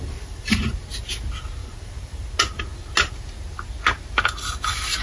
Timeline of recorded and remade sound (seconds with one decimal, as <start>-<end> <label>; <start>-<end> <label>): 0.0-0.7 remade; 0.7-1.6 recorded; 1.6-2.3 remade; 2.3-5.0 recorded